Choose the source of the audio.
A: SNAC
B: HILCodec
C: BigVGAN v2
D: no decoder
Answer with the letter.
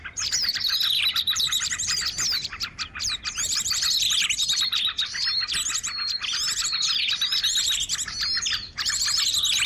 C